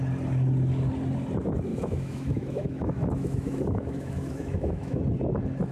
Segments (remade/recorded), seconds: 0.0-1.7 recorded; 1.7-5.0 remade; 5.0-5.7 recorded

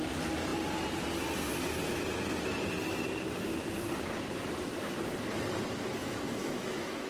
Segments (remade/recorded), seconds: 0.0-6.0 recorded; 6.0-7.1 remade

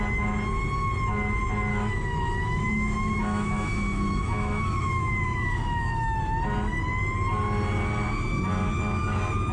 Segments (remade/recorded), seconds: 0.0-1.7 recorded; 1.7-6.2 remade; 6.2-9.5 recorded

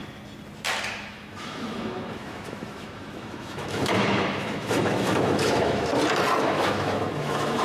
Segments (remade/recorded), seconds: 0.0-1.1 recorded; 1.1-5.9 remade; 5.9-6.4 recorded; 6.4-7.6 remade

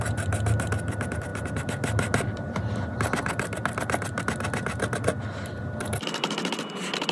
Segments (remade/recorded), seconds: 0.0-7.1 recorded

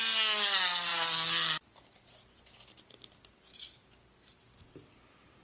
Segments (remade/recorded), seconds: 0.0-5.4 recorded